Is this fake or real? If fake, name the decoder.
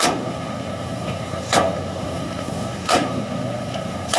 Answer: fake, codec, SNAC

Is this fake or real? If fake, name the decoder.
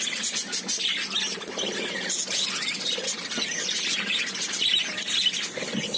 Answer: real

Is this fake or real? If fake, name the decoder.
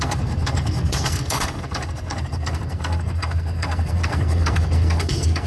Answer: fake, codec, SNAC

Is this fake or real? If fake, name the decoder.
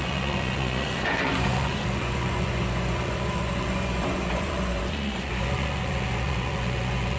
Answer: fake, vocoder, Vocos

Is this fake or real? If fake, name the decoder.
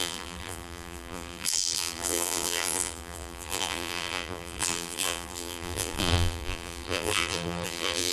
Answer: fake, vocoder, BigVGAN v2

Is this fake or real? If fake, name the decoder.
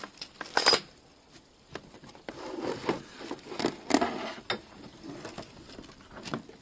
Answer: real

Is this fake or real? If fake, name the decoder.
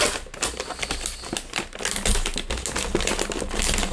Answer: real